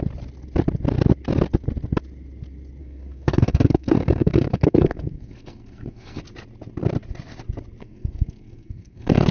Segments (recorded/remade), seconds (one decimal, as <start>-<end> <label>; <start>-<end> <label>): 0.0-2.8 recorded; 2.8-6.2 remade; 6.2-7.8 recorded; 7.8-9.3 remade